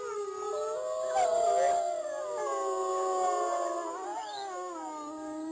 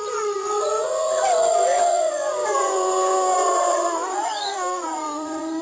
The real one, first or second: first